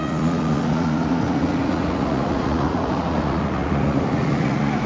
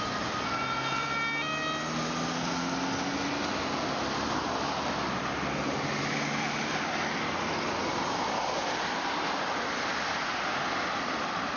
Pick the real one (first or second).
second